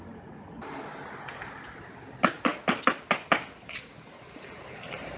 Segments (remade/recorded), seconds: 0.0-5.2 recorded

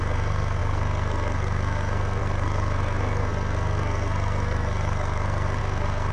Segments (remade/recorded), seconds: 0.0-6.1 remade

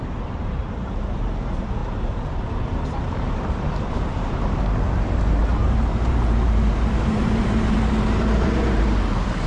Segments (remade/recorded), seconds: 0.0-9.5 remade

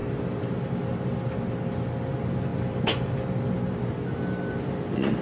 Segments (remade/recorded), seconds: 0.0-5.2 recorded

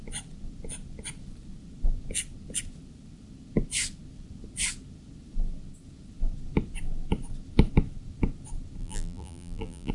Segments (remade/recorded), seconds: 0.0-8.8 recorded; 8.8-9.9 remade

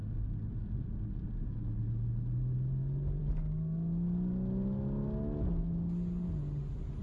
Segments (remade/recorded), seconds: 0.0-7.0 recorded

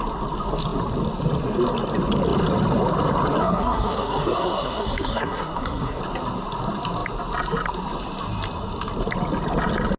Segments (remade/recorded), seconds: 0.0-3.4 recorded; 3.4-6.0 remade; 6.0-10.0 recorded

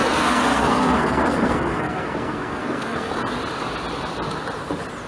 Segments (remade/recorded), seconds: 0.0-3.1 remade; 3.1-5.1 recorded